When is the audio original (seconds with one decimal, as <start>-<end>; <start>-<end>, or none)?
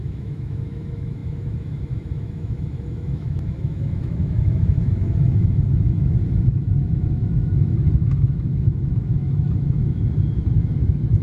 none